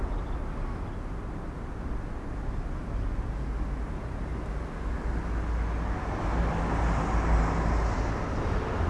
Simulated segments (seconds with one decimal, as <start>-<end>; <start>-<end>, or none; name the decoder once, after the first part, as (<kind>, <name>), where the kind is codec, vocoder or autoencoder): none